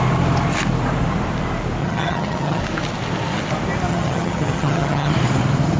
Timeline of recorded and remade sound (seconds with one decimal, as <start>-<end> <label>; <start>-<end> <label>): 0.0-1.8 recorded; 1.8-2.6 remade; 2.6-3.9 recorded; 3.9-5.1 remade; 5.1-5.8 recorded